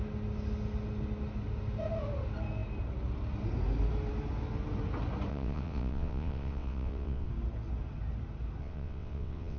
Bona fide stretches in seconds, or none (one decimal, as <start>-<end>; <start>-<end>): 0.0-5.3; 7.3-8.6